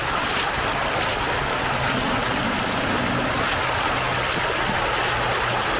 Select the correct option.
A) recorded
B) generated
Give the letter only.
A